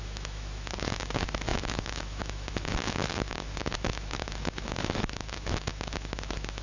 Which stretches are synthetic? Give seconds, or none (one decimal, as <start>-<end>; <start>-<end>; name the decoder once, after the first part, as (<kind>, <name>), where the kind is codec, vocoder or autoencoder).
0.0-6.6 (autoencoder, DAC-VAE)